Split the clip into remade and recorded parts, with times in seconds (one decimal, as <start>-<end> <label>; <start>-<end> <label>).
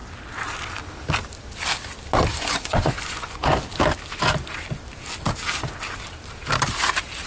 0.0-2.3 recorded; 2.3-3.7 remade; 3.7-7.3 recorded